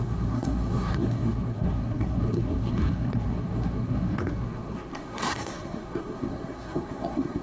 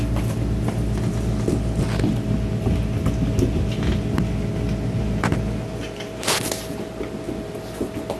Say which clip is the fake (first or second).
first